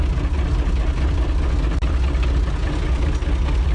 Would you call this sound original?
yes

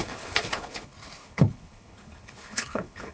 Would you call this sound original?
no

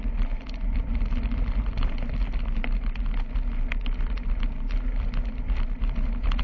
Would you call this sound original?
yes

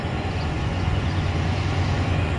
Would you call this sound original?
no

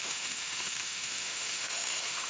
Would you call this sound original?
no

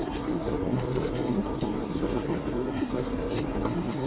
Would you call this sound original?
no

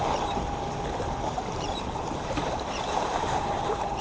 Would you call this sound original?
no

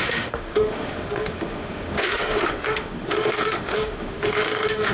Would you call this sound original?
no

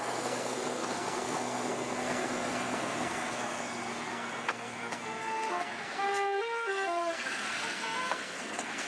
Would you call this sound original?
no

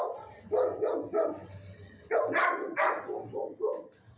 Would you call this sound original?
yes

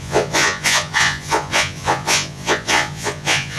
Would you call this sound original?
no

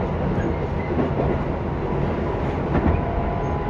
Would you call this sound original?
yes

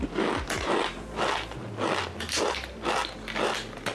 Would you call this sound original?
yes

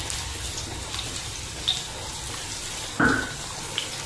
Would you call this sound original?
yes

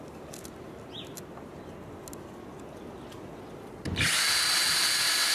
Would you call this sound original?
yes